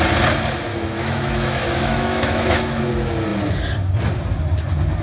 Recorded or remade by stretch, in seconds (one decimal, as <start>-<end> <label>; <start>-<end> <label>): 0.0-0.7 recorded; 0.7-2.9 remade; 2.9-5.0 recorded